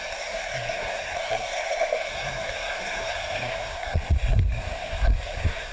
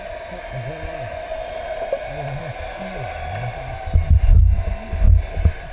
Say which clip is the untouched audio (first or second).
second